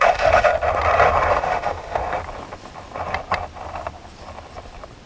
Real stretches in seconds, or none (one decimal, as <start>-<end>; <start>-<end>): 0.5-1.3; 2.0-5.1